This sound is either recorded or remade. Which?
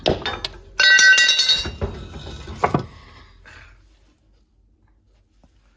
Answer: recorded